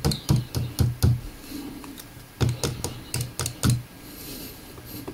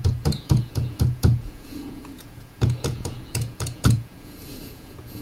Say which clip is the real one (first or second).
first